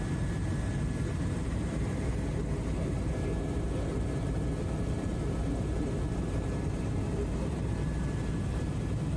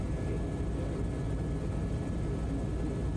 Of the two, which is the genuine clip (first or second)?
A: second